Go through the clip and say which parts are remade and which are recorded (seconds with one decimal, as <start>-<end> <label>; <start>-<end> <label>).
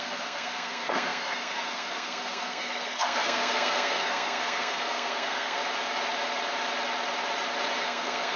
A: 0.0-5.6 remade; 5.6-7.8 recorded; 7.8-8.4 remade